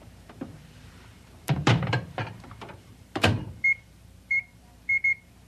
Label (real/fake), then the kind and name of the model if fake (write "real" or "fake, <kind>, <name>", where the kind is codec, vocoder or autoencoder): fake, vocoder, BigVGAN v2